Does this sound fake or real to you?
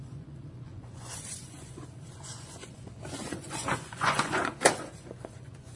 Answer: fake